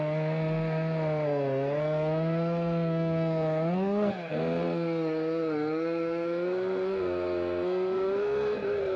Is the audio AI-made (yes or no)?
yes